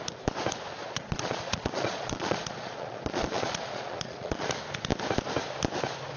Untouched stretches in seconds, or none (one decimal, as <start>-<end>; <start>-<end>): 0.0-0.8; 4.5-6.2